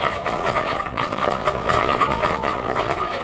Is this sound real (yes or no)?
no